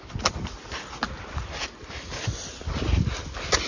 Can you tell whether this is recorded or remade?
recorded